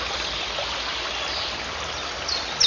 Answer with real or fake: real